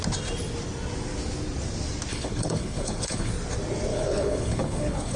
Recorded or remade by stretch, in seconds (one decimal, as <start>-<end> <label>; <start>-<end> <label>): 0.0-2.1 recorded; 2.1-3.3 remade; 3.3-3.9 recorded; 3.9-5.2 remade

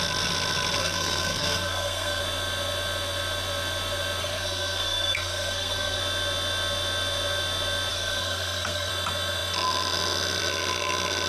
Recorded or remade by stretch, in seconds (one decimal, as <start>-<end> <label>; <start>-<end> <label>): 0.0-0.8 recorded; 0.8-2.2 remade; 2.2-4.2 recorded; 4.2-6.0 remade; 6.0-7.9 recorded; 7.9-8.9 remade; 8.9-11.3 recorded